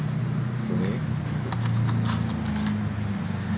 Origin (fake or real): real